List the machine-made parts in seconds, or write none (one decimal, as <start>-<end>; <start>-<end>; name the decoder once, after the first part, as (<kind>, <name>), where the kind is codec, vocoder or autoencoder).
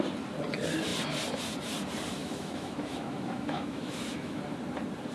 2.2-4.4 (autoencoder, DAC-VAE)